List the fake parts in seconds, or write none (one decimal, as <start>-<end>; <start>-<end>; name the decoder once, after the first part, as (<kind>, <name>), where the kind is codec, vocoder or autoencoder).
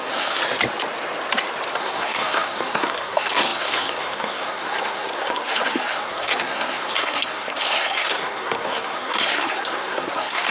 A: 0.0-0.4 (codec, SNAC); 1.8-10.5